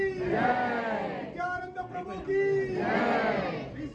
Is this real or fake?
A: real